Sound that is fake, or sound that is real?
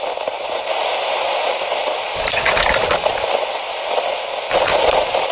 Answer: real